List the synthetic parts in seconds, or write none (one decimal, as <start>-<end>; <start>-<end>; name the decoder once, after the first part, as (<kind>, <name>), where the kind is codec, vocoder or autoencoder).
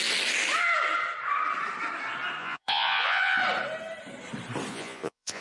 2.4-3.4 (vocoder, Vocos); 4.7-5.4